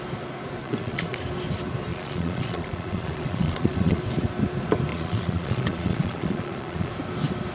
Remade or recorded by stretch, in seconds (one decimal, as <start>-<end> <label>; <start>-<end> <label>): 0.0-0.6 recorded; 0.6-1.2 remade; 1.2-1.9 recorded; 1.9-4.0 remade; 4.0-4.9 recorded; 4.9-6.9 remade; 6.9-7.5 recorded